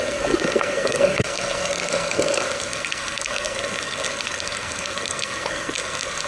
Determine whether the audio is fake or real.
fake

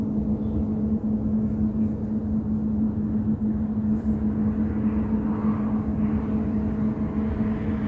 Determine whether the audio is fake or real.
real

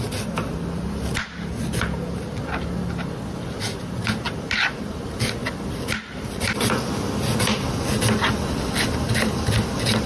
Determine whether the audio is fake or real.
real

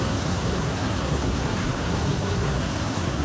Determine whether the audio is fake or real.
fake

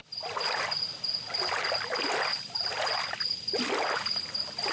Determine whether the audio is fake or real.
real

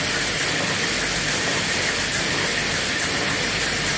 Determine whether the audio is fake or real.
real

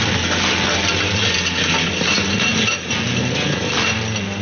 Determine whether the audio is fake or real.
real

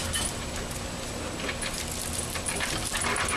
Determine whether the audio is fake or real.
real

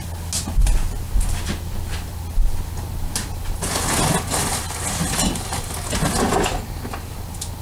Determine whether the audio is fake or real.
real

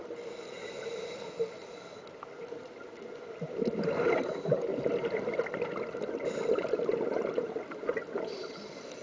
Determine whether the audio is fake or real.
real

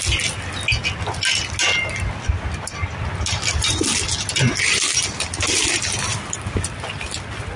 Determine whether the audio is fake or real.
real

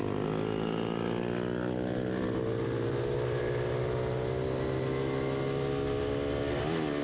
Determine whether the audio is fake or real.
real